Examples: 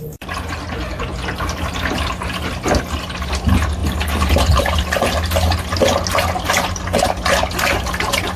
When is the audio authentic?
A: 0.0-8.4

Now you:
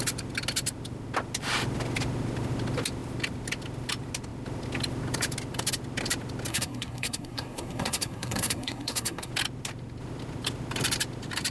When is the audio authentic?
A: 0.0-6.5; 9.3-11.5

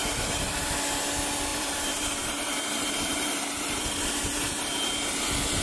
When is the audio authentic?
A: 0.7-1.5; 4.9-5.6

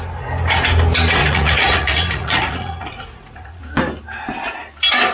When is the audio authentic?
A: 0.0-1.2; 3.6-5.1

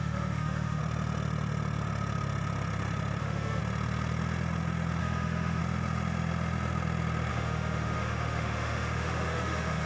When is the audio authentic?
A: 0.8-3.2; 3.6-5.0; 5.6-7.3